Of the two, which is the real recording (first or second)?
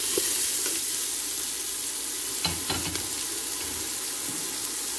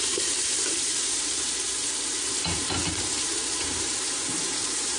first